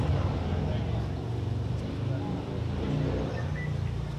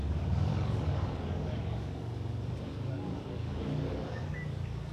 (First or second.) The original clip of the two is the first